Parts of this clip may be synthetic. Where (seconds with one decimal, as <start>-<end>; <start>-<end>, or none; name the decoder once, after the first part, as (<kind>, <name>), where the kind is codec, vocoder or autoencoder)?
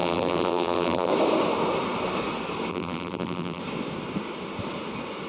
0.0-1.1 (vocoder, BigVGAN v2); 2.7-3.6